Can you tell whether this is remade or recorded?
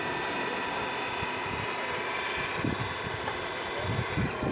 recorded